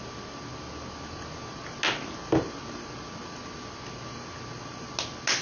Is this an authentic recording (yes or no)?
yes